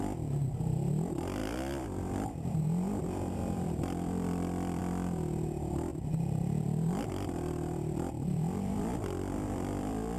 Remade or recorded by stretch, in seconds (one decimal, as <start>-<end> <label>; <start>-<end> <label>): 0.0-1.4 recorded; 1.4-4.8 remade; 4.8-5.9 recorded; 5.9-10.2 remade